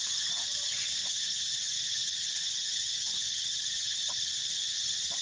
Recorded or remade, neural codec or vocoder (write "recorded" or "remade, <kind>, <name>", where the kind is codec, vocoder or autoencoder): remade, vocoder, HiFi-GAN